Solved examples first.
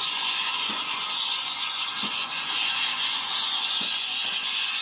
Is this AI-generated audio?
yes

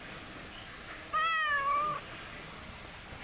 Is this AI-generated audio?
no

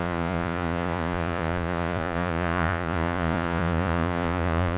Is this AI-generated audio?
yes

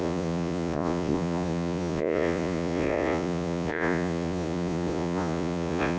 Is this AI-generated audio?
yes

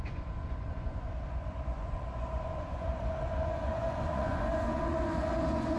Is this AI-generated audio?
yes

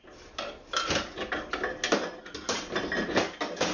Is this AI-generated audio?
no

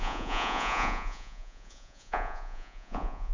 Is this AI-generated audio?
yes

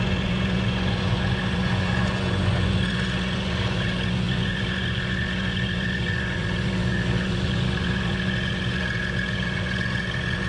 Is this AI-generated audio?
yes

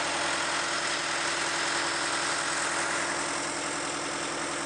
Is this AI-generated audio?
no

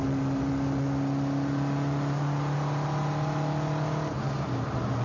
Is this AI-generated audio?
no